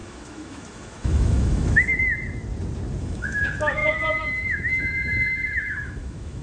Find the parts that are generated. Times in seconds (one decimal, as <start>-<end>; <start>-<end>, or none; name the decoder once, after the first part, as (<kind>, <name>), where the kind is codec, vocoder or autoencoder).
0.0-1.9 (autoencoder, DAC-VAE); 3.0-6.4